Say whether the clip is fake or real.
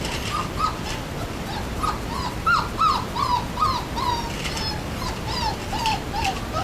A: real